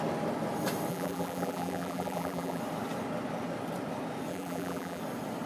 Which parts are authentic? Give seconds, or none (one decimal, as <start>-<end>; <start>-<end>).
0.0-0.9; 2.6-4.3; 5.0-5.5